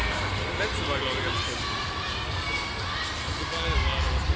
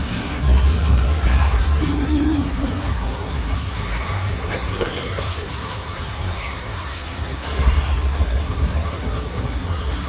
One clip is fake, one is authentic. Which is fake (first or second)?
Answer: second